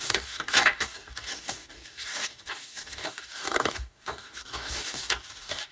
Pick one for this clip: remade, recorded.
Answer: remade